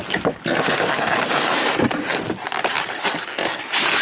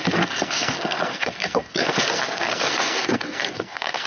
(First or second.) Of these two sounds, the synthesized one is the second